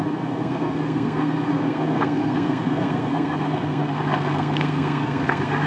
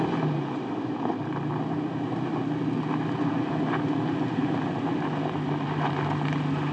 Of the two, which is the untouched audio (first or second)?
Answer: second